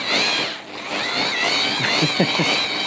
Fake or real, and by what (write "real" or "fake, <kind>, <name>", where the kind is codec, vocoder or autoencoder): real